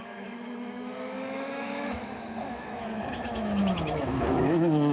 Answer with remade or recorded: remade